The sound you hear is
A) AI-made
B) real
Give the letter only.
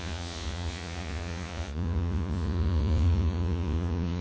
A